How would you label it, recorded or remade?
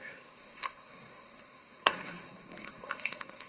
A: remade